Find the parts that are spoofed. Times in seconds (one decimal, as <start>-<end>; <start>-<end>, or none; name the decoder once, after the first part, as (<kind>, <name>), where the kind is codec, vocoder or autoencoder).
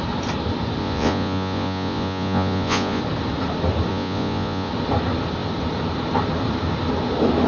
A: 0.8-3.0 (vocoder, Vocos); 3.9-4.7